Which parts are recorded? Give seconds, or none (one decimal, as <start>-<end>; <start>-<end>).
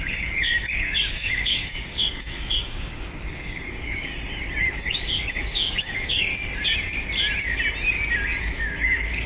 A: 4.1-4.6; 6.3-8.4